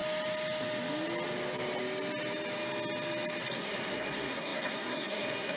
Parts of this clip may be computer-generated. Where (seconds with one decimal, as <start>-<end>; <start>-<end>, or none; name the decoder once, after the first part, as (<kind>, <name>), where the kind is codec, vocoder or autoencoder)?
3.4-5.6 (codec, SNAC)